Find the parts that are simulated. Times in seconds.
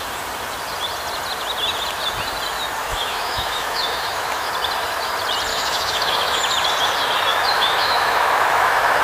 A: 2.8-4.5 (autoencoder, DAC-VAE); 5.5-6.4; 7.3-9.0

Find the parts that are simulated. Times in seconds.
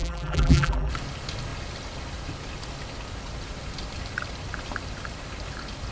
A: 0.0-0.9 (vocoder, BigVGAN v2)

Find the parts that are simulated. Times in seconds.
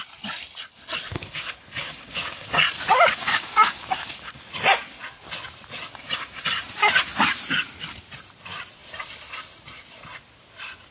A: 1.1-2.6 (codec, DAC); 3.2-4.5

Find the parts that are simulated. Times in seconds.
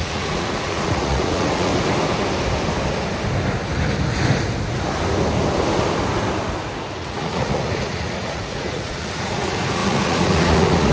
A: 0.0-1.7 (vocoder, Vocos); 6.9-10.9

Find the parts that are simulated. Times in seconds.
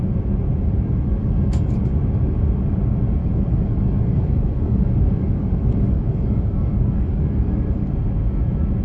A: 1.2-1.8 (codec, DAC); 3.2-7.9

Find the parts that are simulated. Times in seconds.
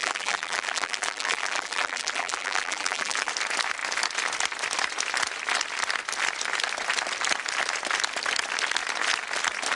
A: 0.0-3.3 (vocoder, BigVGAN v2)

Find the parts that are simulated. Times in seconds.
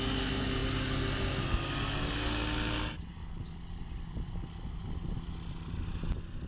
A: none